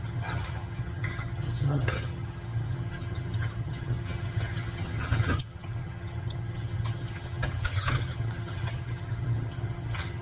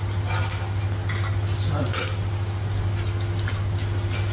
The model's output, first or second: first